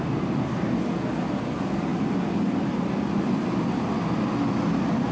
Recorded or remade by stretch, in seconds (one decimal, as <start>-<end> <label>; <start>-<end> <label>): 0.0-5.1 recorded